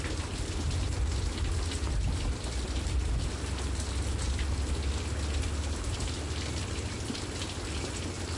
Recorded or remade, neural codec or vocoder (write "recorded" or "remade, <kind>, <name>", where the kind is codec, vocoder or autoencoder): recorded